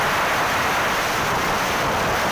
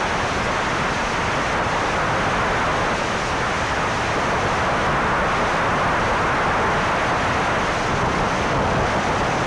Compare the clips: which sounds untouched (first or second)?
second